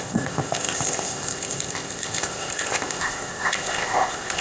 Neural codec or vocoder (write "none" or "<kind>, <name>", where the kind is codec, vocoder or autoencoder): codec, ZipCodec